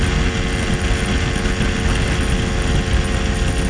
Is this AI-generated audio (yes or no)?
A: no